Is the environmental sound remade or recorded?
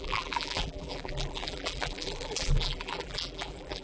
remade